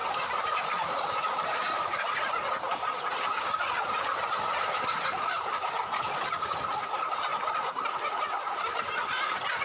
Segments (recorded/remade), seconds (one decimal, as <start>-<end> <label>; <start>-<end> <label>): 0.0-2.3 remade; 2.3-4.1 recorded; 4.1-5.7 remade; 5.7-7.3 recorded; 7.3-8.2 remade; 8.2-9.6 recorded